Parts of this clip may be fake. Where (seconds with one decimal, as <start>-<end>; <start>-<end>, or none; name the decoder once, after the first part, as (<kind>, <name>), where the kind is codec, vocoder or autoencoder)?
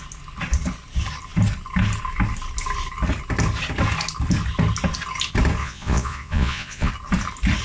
5.6-6.9 (vocoder, Vocos)